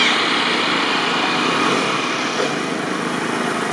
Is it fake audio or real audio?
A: real